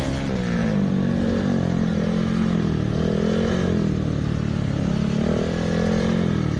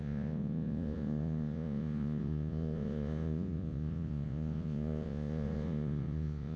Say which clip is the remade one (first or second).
second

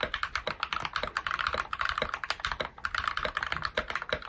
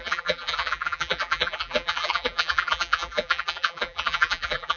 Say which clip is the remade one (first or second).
second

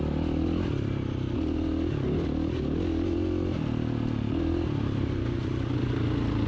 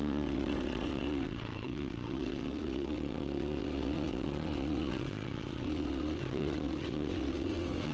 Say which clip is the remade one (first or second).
second